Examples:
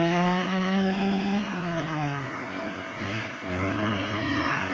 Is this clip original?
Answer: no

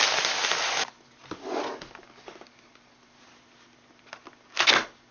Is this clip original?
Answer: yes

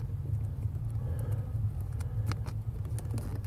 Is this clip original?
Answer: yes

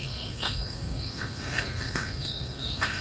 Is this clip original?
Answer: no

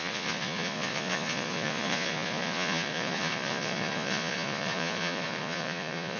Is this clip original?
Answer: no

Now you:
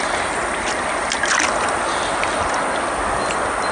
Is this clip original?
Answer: yes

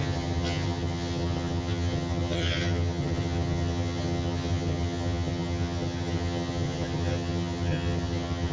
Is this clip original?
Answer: no